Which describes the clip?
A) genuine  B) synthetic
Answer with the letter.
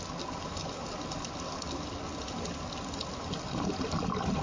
A